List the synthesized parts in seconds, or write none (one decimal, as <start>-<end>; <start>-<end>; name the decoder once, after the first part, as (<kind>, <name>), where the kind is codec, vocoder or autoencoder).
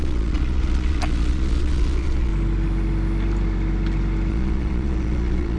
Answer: 0.0-2.3 (vocoder, Vocos); 4.3-5.6